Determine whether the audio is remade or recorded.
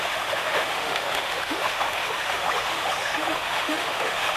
remade